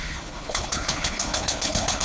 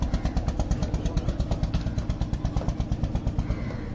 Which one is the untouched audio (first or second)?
second